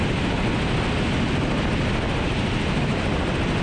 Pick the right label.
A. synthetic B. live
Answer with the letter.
B